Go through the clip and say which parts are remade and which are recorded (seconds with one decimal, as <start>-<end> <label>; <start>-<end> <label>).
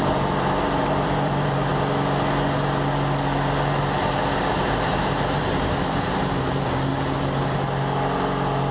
0.0-1.7 remade; 1.7-4.5 recorded; 4.5-6.9 remade; 6.9-8.7 recorded